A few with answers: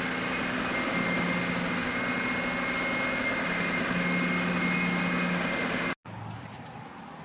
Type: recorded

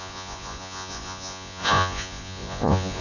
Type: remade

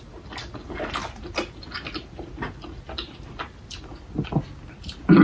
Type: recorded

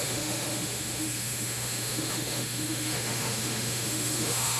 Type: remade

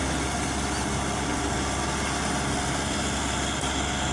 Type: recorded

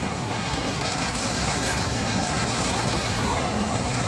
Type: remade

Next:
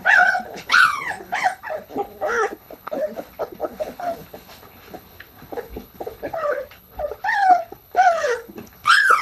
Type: remade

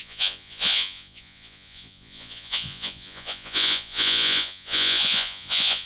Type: remade